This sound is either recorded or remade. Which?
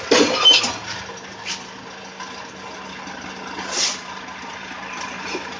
recorded